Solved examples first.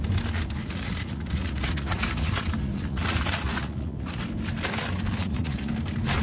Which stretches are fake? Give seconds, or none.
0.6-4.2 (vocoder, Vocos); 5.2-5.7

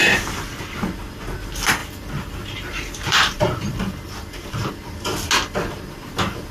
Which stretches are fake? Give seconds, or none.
1.8-4.7 (vocoder, BigVGAN v2)

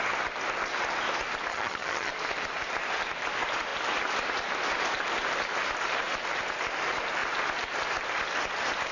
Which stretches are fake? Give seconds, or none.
1.5-2.1 (vocoder, HiFi-GAN)

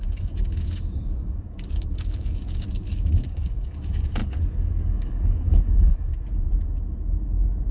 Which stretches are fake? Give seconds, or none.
0.0-6.1 (codec, DAC)

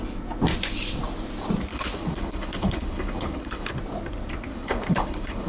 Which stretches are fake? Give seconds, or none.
1.7-3.7 (codec, HILCodec); 4.5-5.5